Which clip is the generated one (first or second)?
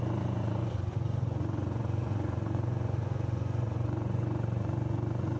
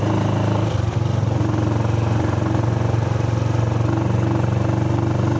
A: first